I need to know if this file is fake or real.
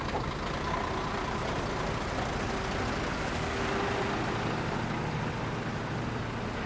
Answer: real